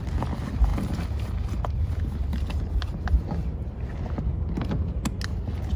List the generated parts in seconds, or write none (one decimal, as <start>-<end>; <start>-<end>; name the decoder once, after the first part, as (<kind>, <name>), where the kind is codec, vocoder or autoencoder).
none

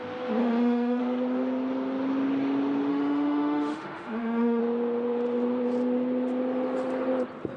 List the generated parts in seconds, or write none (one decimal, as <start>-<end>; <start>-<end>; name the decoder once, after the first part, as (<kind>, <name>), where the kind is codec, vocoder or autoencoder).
0.4-1.0 (autoencoder, DAC-VAE); 2.9-4.6

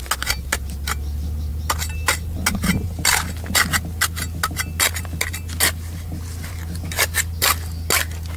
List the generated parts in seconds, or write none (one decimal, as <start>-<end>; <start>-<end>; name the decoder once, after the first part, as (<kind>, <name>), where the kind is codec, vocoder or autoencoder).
none

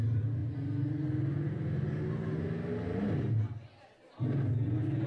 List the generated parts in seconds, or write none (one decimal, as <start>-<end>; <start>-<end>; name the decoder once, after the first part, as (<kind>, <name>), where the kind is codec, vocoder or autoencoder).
none

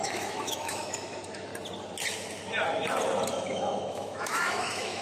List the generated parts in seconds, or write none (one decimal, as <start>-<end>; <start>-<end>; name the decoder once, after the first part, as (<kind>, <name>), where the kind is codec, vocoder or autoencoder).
0.0-1.5 (autoencoder, DAC-VAE); 3.3-5.0

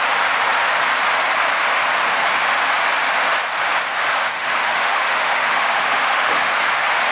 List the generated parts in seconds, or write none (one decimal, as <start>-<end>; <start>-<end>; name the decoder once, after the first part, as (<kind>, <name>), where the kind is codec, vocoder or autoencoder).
4.2-6.5 (autoencoder, DAC-VAE)